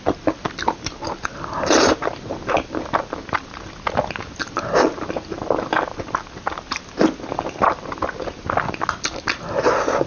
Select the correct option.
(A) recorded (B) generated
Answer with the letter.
A